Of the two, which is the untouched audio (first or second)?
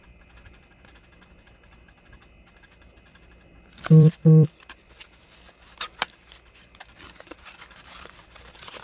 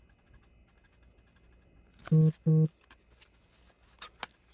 second